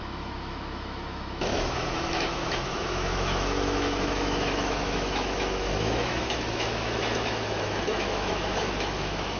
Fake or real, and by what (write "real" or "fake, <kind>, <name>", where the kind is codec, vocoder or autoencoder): fake, autoencoder, DAC-VAE